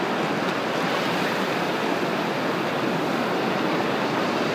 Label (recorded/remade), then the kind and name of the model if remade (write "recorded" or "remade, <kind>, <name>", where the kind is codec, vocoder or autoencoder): recorded